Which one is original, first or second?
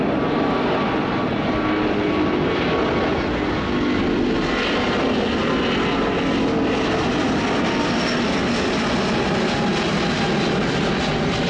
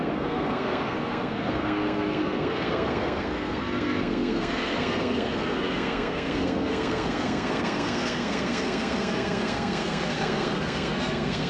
first